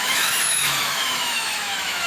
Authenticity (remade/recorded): remade